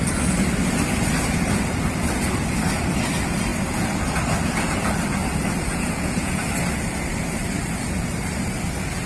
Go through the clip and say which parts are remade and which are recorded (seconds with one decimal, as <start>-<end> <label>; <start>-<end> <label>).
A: 0.0-5.7 recorded; 5.7-6.4 remade; 6.4-9.1 recorded